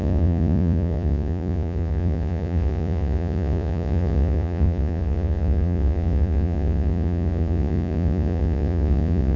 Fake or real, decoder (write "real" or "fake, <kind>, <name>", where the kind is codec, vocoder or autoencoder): fake, vocoder, Vocos